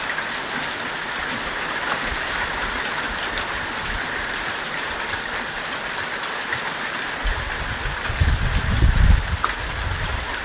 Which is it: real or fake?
real